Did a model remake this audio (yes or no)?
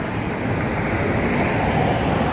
yes